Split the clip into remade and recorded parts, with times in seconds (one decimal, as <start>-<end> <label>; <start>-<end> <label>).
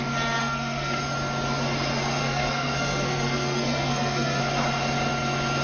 0.0-0.4 recorded; 0.4-1.0 remade; 1.0-2.2 recorded; 2.2-4.4 remade; 4.4-5.6 recorded